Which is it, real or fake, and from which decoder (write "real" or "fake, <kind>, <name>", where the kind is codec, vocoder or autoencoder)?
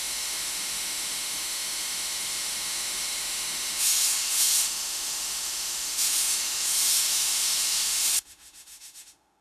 fake, autoencoder, DAC-VAE